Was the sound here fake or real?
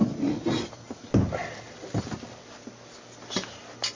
real